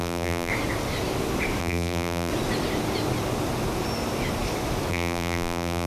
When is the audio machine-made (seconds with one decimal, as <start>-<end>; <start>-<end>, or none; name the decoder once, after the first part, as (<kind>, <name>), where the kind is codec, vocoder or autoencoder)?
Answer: 0.0-0.5 (vocoder, BigVGAN v2); 1.6-2.3; 4.9-5.9